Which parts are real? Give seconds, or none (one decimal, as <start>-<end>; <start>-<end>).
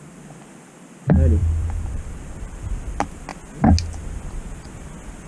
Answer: 3.3-5.3